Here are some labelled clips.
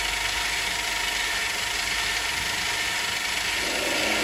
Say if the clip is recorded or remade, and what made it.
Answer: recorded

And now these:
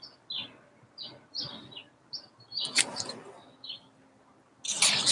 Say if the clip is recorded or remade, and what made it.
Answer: recorded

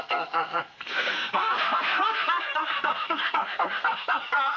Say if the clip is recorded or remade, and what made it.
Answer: remade, codec, SNAC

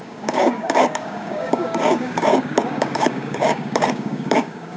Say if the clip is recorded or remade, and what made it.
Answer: remade, codec, DAC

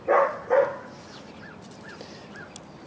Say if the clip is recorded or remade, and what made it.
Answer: recorded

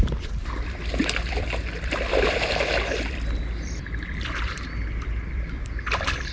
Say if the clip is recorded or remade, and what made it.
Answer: remade, vocoder, BigVGAN v2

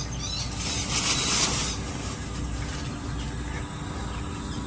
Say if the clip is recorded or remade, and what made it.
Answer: recorded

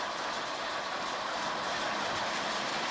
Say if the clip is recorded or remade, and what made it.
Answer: recorded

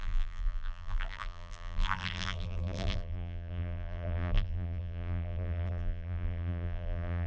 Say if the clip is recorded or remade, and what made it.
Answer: remade, vocoder, BigVGAN v2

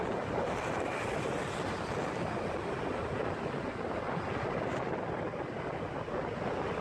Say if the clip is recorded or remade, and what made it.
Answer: recorded